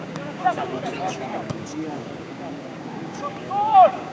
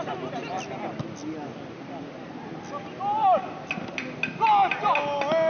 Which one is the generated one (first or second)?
first